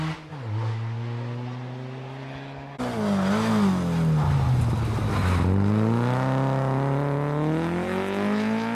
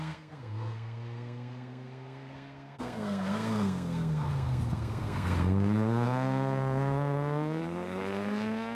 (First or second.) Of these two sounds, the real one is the first